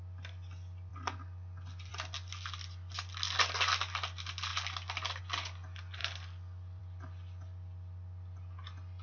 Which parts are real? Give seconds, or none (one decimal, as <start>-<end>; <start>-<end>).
0.0-9.0

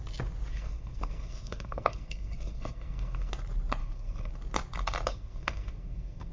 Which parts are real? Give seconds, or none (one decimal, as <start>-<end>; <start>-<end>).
0.0-0.5; 3.3-3.8; 4.3-5.1

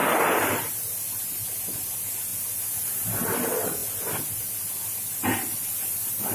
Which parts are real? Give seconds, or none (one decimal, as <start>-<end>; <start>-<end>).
0.7-6.3

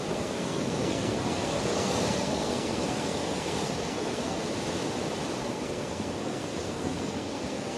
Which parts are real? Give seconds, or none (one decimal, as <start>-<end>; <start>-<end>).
4.4-5.4

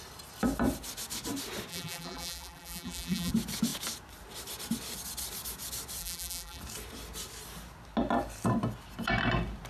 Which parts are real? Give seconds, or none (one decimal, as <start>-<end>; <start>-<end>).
0.0-1.7; 3.3-6.0; 6.6-9.7

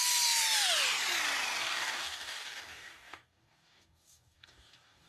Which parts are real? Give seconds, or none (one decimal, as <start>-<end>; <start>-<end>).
0.0-1.6

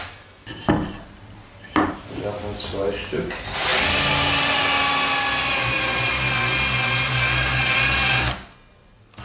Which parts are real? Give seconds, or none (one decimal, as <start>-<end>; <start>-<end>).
0.0-9.2